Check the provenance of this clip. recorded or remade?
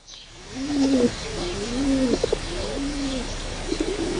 remade